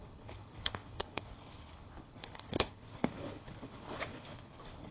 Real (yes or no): no